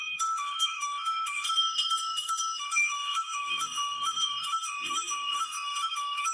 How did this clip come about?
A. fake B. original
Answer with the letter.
A